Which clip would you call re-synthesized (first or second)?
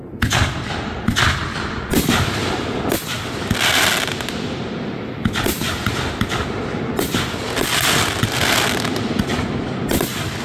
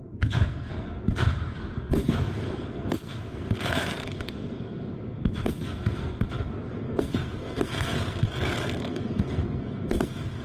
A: second